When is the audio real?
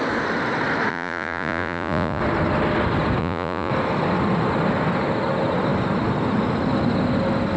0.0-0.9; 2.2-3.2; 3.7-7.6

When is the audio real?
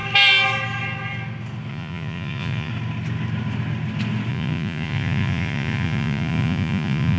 0.0-1.7; 2.7-4.3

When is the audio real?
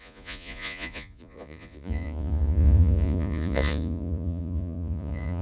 none